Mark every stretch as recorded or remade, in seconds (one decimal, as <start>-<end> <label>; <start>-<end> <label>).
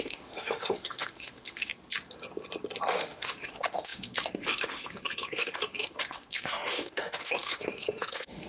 0.0-1.7 remade; 1.7-2.9 recorded; 2.9-8.5 remade